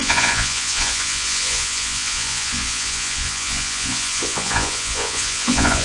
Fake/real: fake